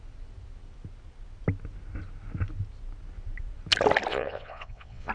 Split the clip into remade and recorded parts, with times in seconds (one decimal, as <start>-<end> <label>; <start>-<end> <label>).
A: 0.0-4.1 recorded; 4.1-5.1 remade